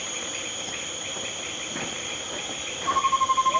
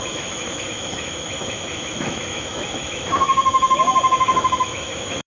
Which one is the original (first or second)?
first